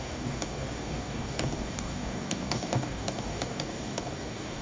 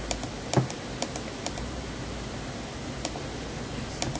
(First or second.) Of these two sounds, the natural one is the second